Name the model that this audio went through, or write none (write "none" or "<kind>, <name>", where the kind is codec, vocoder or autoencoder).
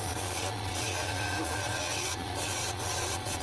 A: vocoder, Vocos